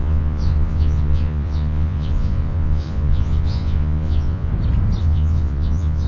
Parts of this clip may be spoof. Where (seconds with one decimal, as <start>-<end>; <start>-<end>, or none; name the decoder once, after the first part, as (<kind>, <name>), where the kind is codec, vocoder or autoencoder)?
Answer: 0.0-4.5 (vocoder, Vocos); 5.0-6.1